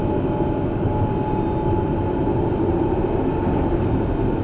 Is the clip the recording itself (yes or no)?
yes